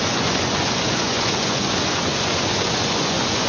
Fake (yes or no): yes